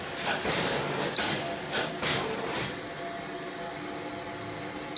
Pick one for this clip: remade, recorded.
recorded